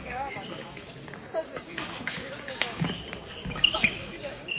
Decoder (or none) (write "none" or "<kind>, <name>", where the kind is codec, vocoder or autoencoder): codec, DAC